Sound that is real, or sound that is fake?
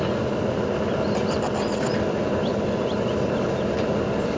real